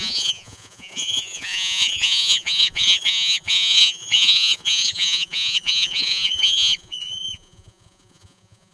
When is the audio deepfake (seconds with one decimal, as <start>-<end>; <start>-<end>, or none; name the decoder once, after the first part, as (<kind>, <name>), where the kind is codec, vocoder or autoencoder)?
0.0-8.7 (vocoder, Vocos)